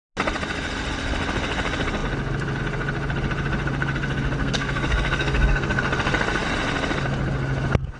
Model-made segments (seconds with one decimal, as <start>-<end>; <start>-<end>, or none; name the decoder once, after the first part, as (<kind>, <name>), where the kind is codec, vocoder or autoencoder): 4.4-5.8 (codec, SNAC)